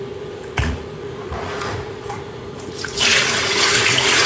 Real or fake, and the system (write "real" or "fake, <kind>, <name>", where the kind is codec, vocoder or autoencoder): fake, vocoder, Vocos